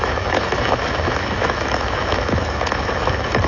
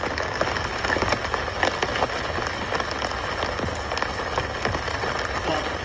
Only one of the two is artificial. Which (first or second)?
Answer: first